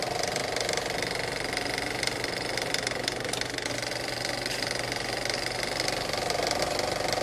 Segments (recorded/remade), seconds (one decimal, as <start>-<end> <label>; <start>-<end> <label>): 0.0-7.2 recorded